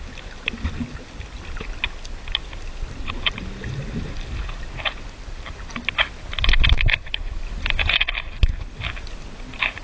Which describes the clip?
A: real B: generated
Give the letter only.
A